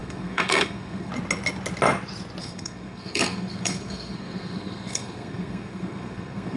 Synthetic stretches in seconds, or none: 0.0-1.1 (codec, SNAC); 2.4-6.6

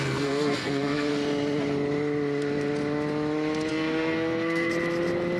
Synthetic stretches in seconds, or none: 0.0-1.1 (codec, SNAC); 3.7-4.7